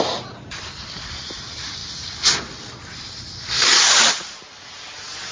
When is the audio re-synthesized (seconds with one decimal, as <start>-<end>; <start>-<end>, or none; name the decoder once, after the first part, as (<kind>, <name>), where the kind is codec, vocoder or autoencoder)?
none